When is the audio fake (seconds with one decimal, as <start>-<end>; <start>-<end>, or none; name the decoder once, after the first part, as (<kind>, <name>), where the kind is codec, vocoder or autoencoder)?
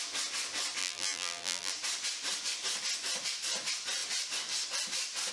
0.8-1.7 (vocoder, BigVGAN v2)